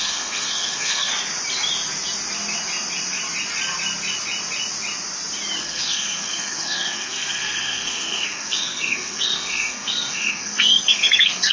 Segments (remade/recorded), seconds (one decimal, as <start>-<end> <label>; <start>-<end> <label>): 0.0-1.1 remade; 1.1-5.6 recorded; 5.6-11.5 remade